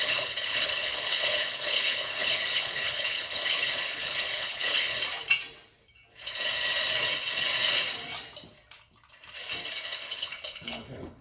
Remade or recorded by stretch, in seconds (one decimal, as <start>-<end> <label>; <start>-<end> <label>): 0.0-4.9 remade; 4.9-9.7 recorded; 9.7-11.2 remade